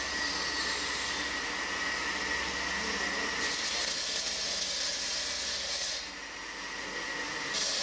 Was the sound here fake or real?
real